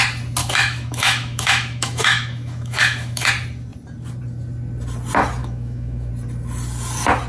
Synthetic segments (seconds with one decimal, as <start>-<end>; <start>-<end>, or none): 0.4-3.3; 5.4-6.1